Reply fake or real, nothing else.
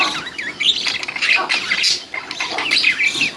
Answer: real